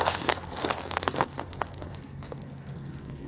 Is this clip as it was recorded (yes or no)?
no